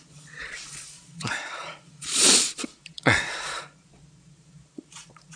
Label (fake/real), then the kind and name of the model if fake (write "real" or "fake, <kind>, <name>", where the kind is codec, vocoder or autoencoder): fake, vocoder, Vocos